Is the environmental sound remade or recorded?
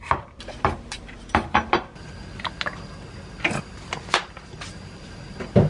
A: recorded